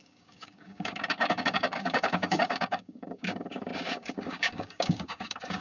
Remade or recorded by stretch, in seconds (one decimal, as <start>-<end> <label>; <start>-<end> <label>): 0.0-5.6 remade